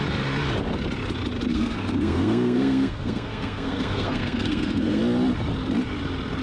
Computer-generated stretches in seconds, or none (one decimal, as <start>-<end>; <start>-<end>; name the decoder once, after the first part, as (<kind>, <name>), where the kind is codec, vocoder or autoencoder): 1.5-5.0 (codec, SNAC)